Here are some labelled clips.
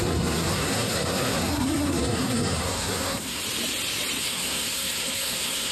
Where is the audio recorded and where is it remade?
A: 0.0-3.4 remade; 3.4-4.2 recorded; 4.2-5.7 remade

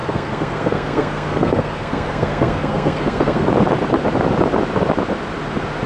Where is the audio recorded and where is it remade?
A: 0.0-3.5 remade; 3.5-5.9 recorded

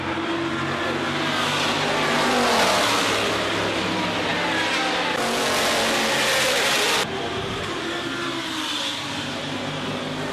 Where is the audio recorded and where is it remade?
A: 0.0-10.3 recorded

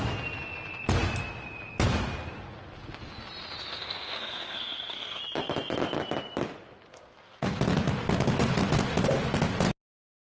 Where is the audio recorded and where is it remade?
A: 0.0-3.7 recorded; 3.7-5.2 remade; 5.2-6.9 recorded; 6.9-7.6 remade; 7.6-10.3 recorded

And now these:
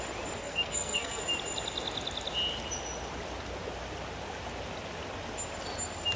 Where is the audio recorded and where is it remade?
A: 0.0-0.4 recorded; 0.4-1.2 remade; 1.2-6.2 recorded